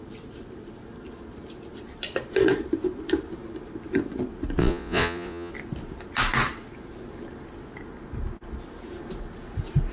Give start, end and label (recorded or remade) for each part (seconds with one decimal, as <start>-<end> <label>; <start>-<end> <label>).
0.0-4.6 recorded; 4.6-5.5 remade; 5.5-9.9 recorded